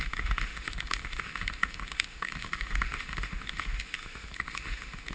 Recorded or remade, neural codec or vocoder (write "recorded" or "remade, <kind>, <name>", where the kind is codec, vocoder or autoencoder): remade, autoencoder, DAC-VAE